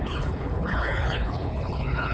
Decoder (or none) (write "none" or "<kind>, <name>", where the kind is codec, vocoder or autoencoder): codec, HILCodec